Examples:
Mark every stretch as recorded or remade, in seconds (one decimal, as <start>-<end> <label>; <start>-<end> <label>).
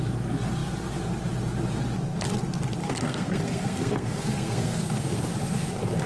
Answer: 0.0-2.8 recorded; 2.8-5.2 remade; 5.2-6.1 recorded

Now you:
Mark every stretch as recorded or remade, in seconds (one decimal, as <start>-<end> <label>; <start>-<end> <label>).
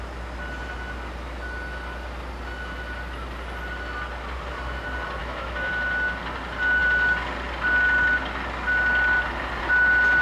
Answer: 0.0-5.2 recorded; 5.2-5.7 remade; 5.7-10.2 recorded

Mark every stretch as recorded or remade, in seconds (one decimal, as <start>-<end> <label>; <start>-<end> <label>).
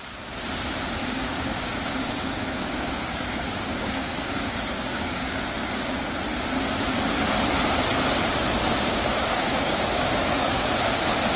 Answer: 0.0-1.0 recorded; 1.0-6.2 remade; 6.2-8.6 recorded; 8.6-10.7 remade; 10.7-11.4 recorded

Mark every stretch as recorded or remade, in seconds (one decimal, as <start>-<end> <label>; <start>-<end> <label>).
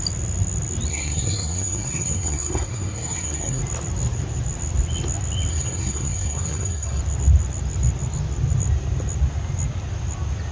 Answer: 0.0-0.9 recorded; 0.9-3.6 remade; 3.6-5.5 recorded; 5.5-7.0 remade; 7.0-10.5 recorded